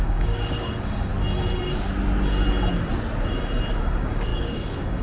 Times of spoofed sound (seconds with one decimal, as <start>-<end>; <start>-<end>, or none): 0.0-1.1; 3.7-5.0